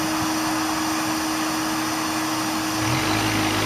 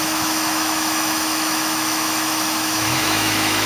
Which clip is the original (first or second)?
first